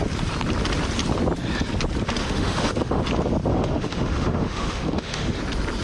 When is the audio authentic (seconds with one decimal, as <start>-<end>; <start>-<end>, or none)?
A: 0.0-2.2; 3.0-3.5; 5.3-5.8